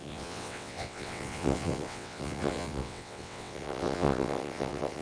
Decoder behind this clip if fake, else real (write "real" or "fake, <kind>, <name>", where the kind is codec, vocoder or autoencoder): fake, vocoder, WaveNeXt